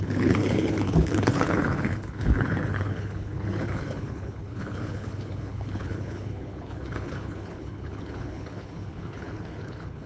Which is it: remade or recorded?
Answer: remade